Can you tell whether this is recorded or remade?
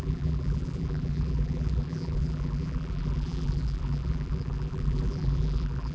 remade